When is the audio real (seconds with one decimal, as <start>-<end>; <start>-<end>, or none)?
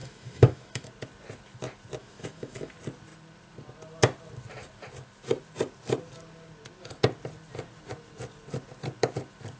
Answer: 0.9-2.0; 2.7-9.6